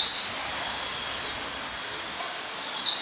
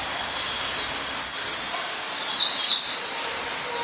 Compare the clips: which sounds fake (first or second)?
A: first